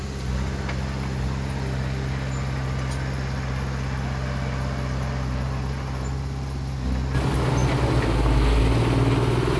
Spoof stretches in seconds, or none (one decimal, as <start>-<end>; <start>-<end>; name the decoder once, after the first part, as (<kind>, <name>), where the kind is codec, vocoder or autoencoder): none